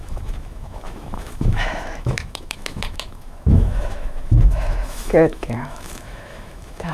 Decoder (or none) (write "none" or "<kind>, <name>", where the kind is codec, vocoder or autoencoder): autoencoder, DAC-VAE